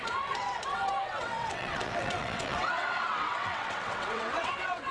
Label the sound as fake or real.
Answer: fake